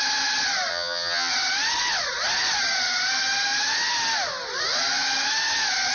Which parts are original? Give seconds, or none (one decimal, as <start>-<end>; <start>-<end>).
0.0-0.7; 1.3-5.9